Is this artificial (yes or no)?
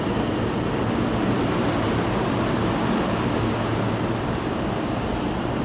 no